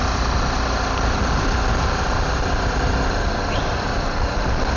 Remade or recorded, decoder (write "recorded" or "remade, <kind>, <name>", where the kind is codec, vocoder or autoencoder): recorded